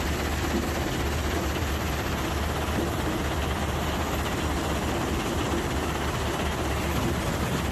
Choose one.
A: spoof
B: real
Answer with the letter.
B